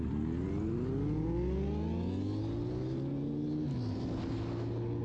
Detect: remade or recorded recorded